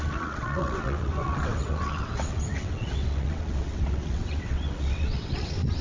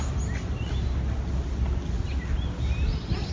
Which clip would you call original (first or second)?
second